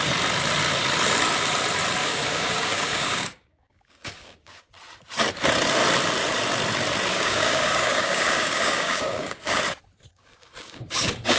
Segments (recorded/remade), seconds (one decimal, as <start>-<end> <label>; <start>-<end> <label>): 0.0-2.0 recorded; 2.0-4.7 remade; 4.7-7.1 recorded; 7.1-9.6 remade; 9.6-10.1 recorded; 10.1-11.4 remade